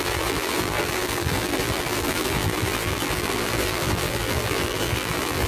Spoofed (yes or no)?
yes